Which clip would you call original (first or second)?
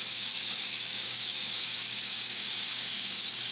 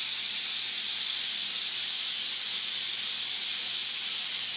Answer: second